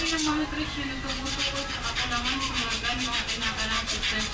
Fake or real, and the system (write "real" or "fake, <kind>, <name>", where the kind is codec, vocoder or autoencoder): real